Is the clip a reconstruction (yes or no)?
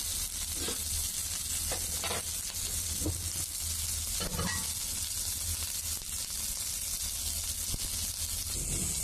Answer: no